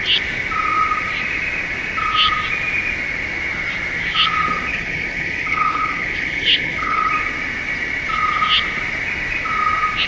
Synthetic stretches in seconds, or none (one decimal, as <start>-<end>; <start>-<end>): 4.7-7.1